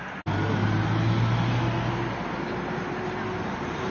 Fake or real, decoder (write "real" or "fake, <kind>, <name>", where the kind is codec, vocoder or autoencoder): real